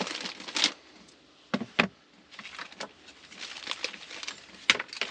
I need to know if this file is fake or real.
real